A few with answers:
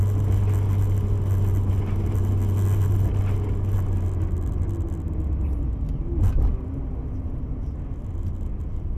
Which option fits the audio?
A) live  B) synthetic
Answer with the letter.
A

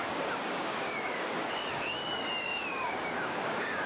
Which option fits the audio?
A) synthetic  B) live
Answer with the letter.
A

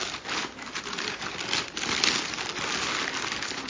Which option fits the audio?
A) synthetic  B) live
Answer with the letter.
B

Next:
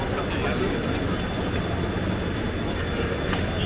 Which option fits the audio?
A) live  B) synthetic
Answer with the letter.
A